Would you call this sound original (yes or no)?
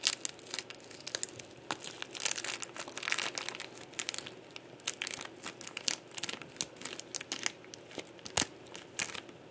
yes